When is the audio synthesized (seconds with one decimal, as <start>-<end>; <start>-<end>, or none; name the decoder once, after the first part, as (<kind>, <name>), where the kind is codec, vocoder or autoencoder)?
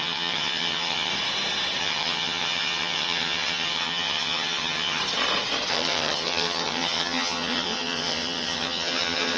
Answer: 0.0-1.1 (vocoder, HiFi-GAN); 1.8-5.0; 5.7-9.4